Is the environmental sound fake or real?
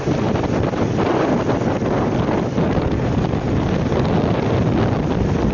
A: real